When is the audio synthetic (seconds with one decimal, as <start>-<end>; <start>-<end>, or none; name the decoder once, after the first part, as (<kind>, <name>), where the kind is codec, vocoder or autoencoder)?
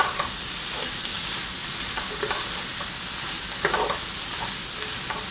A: none